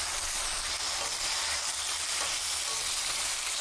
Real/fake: real